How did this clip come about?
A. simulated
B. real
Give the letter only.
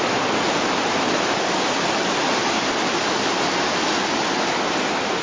B